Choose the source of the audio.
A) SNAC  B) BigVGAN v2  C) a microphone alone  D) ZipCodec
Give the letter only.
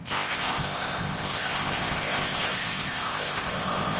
D